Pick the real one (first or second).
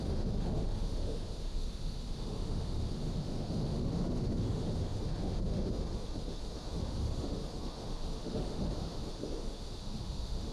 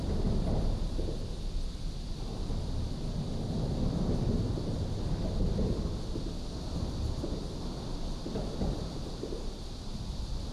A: second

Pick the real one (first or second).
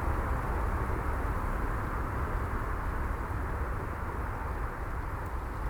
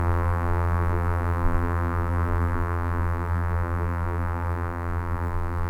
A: first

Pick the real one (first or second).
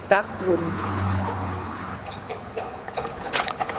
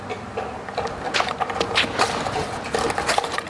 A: second